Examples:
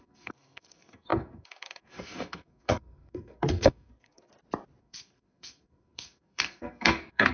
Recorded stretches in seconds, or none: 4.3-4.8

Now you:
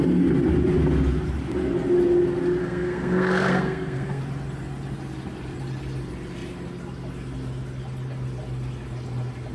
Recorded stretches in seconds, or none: 0.0-2.6; 4.2-9.5

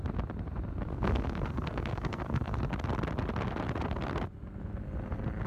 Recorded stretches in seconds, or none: 0.0-0.9; 2.6-5.5

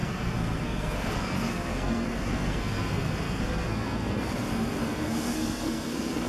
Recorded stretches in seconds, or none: none

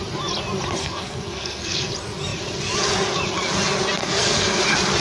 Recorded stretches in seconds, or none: 0.0-0.8; 1.9-4.0; 4.6-5.0